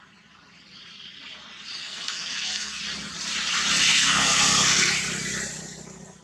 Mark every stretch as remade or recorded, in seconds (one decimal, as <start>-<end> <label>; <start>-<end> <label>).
0.0-1.8 recorded; 1.8-2.8 remade; 2.8-3.9 recorded; 3.9-4.9 remade; 4.9-6.2 recorded